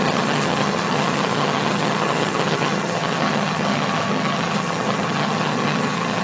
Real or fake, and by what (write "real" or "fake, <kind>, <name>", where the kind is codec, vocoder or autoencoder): fake, vocoder, HiFi-GAN